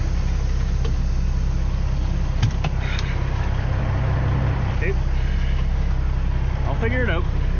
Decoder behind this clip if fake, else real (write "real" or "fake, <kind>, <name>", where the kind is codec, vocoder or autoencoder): real